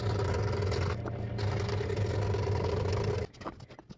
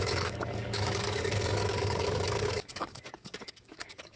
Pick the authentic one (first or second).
first